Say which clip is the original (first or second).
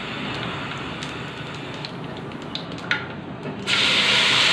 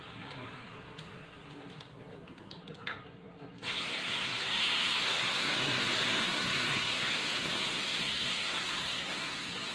first